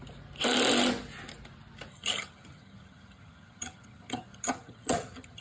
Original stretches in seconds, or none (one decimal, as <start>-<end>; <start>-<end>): 0.0-1.9